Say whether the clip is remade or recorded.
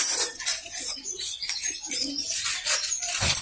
recorded